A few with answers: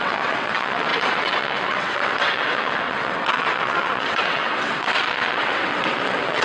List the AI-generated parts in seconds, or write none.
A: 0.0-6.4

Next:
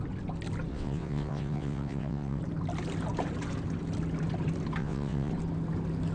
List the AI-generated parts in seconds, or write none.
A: 0.7-2.4; 4.8-5.3

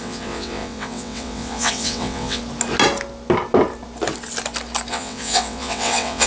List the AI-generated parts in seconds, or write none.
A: 0.0-2.4; 4.9-6.3